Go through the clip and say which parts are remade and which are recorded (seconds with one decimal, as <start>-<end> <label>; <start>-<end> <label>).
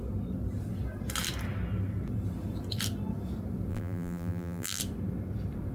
0.0-3.7 recorded; 3.7-4.8 remade; 4.8-5.7 recorded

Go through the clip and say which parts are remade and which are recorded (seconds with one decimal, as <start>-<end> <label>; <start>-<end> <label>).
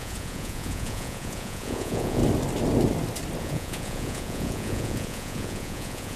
0.0-2.2 remade; 2.2-3.4 recorded; 3.4-6.2 remade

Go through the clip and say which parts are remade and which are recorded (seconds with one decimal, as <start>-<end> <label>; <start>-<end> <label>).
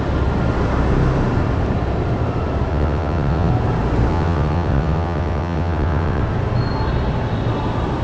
0.0-2.7 recorded; 2.7-3.5 remade; 3.5-4.1 recorded; 4.1-6.2 remade; 6.2-8.0 recorded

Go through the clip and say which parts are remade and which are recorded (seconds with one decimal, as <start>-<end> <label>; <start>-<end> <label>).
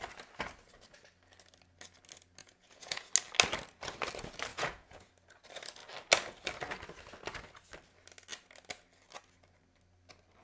0.0-2.4 recorded; 2.4-3.1 remade; 3.1-4.5 recorded; 4.5-5.1 remade; 5.1-10.4 recorded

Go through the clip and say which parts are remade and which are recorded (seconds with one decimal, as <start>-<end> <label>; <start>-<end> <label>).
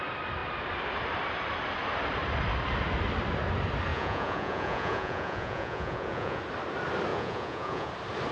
0.0-3.9 recorded; 3.9-6.4 remade; 6.4-7.1 recorded; 7.1-7.9 remade; 7.9-8.3 recorded